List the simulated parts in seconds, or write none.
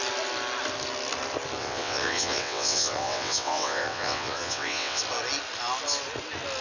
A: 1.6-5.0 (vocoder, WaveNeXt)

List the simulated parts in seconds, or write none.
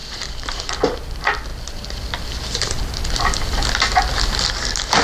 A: 0.0-0.7 (vocoder, BigVGAN v2)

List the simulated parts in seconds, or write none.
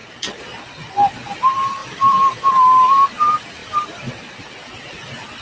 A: 1.8-2.5 (vocoder, BigVGAN v2); 3.6-4.1